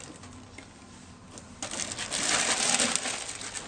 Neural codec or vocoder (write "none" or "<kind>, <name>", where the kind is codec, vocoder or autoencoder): none